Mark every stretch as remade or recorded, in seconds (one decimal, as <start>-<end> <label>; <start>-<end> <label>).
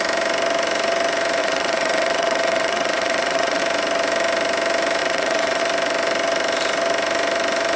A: 0.0-1.4 recorded; 1.4-3.6 remade; 3.6-5.0 recorded; 5.0-5.6 remade; 5.6-7.8 recorded